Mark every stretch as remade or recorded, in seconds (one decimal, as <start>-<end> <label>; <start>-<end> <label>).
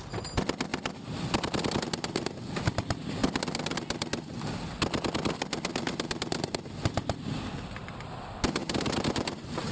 0.0-8.6 recorded; 8.6-9.7 remade